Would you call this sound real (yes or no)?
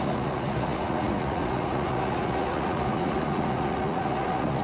no